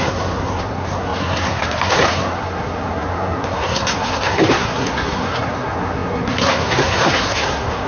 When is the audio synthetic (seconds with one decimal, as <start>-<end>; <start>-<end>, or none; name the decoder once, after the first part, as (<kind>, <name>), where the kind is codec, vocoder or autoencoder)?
0.0-7.9 (codec, SNAC)

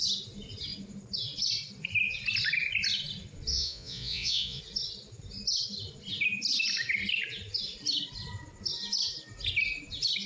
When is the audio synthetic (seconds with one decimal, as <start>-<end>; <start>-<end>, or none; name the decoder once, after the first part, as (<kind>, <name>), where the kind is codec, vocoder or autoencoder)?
3.5-4.6 (vocoder, Vocos)

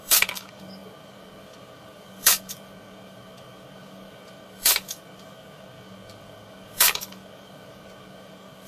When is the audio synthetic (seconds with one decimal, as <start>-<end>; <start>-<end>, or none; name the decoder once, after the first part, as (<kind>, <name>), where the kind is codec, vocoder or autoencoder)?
0.0-8.7 (codec, DAC)

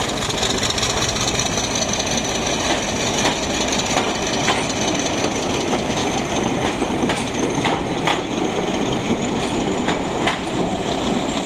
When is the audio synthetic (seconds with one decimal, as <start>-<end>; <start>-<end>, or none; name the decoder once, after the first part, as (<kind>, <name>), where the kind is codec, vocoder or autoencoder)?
6.0-7.4 (vocoder, BigVGAN v2); 10.8-11.5